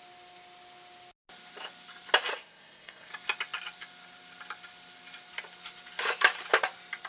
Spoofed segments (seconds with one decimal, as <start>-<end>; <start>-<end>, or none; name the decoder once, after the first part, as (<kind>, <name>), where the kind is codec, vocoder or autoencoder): 2.3-3.1 (codec, SNAC)